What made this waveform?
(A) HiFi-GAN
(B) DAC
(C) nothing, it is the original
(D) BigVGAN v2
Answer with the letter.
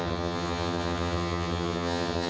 A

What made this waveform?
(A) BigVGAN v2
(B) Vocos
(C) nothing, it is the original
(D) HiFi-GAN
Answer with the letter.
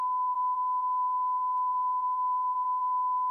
A